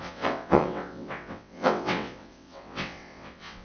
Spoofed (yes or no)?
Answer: yes